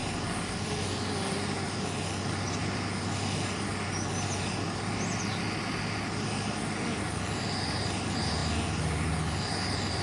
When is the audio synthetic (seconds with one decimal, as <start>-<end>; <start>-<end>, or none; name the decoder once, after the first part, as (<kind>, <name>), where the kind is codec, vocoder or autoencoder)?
none